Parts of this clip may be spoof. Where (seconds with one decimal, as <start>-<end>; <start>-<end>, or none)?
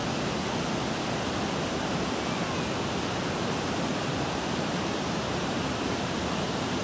3.9-6.8